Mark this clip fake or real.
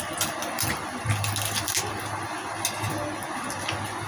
real